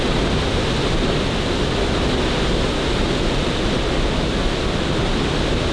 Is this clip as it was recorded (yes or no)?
yes